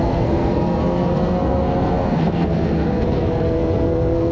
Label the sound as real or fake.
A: fake